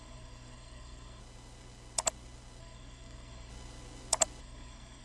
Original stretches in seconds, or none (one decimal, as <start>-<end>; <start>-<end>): 1.2-2.6; 3.5-4.4